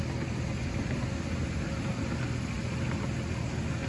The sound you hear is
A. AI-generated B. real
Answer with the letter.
B